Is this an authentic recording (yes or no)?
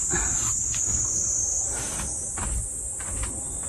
yes